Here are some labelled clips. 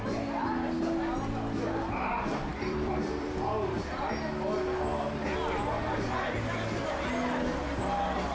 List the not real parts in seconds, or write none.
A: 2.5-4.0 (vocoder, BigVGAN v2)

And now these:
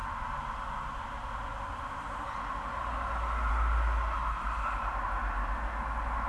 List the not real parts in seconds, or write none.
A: none